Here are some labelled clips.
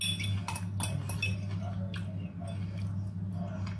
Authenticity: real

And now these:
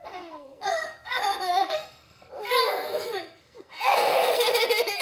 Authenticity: fake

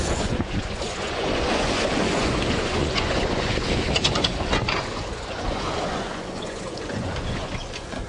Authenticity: fake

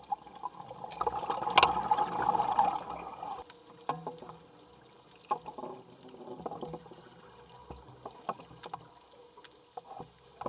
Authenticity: real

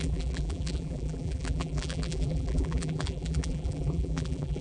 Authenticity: fake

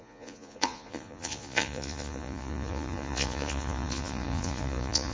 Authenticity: fake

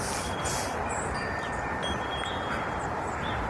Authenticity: real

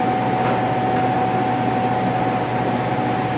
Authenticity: real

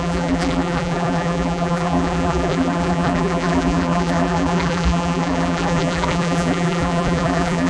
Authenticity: fake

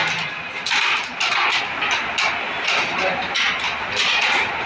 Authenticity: real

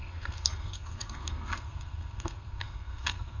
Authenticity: fake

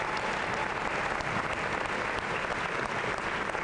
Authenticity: real